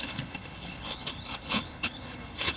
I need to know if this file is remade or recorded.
remade